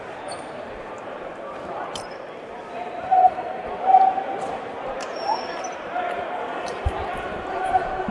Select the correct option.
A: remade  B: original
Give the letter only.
A